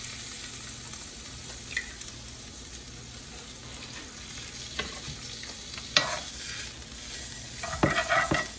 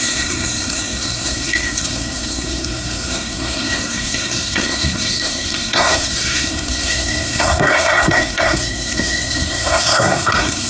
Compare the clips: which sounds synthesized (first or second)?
second